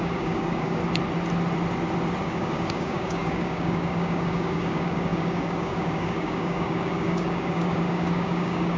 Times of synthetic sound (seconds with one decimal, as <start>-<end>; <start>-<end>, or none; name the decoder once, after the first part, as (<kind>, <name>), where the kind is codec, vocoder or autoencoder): 0.0-0.8 (codec, DAC); 2.2-8.8